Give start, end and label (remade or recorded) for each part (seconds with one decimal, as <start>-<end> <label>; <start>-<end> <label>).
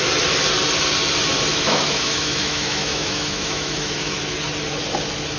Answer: 0.0-1.5 recorded; 1.5-4.2 remade; 4.2-5.4 recorded